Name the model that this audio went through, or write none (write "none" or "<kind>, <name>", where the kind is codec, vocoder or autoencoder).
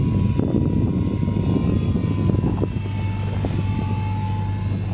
none